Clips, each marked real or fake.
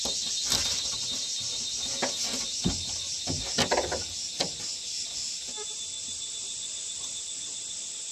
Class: real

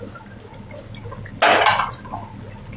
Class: real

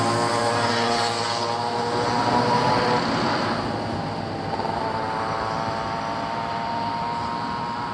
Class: real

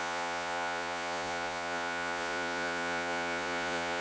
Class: fake